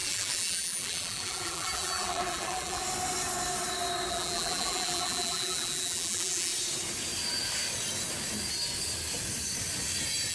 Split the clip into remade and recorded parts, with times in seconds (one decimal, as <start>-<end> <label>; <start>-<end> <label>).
0.0-2.8 remade; 2.8-4.1 recorded; 4.1-6.5 remade; 6.5-10.3 recorded